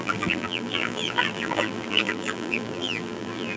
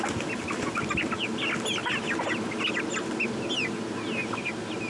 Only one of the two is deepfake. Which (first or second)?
first